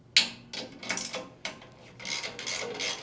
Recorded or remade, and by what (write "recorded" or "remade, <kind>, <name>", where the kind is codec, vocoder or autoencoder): recorded